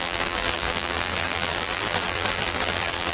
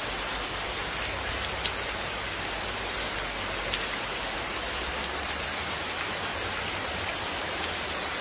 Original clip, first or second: second